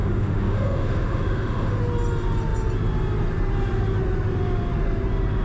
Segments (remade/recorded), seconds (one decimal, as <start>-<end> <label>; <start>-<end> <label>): 0.0-1.8 remade; 1.8-5.4 recorded